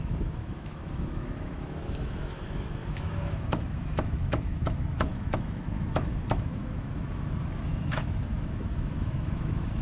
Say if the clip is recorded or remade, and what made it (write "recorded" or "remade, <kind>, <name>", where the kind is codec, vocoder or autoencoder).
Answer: remade, autoencoder, DAC-VAE